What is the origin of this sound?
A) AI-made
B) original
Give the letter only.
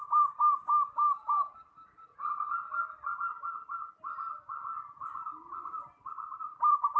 A